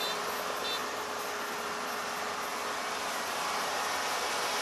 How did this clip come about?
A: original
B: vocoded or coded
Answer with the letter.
A